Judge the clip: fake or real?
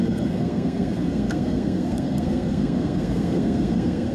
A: fake